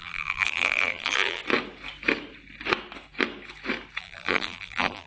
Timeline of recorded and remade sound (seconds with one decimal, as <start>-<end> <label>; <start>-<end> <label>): 0.0-1.4 remade; 1.4-4.0 recorded; 4.0-5.1 remade